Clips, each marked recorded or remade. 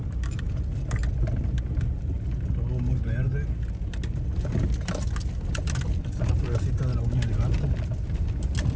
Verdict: recorded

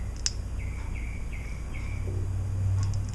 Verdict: recorded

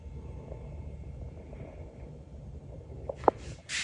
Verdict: remade